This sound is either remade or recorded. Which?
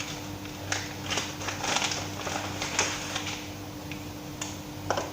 recorded